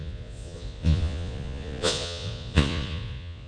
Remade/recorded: remade